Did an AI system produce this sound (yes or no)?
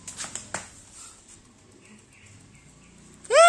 no